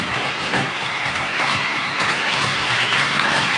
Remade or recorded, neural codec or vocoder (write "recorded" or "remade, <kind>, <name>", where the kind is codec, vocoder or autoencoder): remade, codec, SNAC